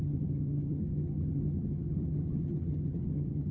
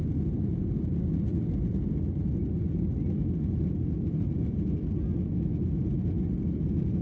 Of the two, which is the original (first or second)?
second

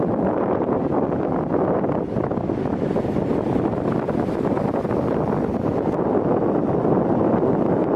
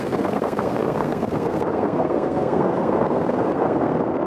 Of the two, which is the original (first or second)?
first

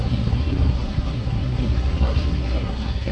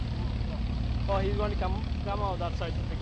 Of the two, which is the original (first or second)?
second